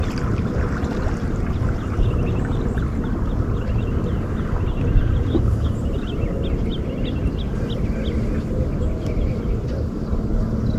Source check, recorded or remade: recorded